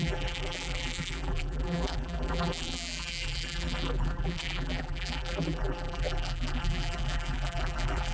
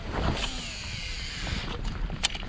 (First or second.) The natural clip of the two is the second